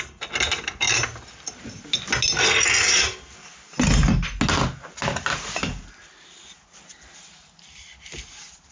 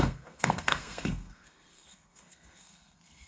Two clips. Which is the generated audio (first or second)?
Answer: second